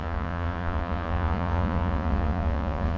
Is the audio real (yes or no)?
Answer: no